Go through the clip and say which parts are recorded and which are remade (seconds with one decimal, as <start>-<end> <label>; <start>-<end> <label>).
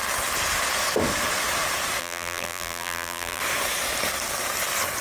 0.0-2.0 recorded; 2.0-3.4 remade; 3.4-5.0 recorded